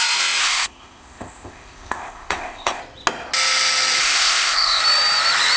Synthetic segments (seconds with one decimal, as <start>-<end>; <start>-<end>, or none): 0.4-2.8; 4.0-4.8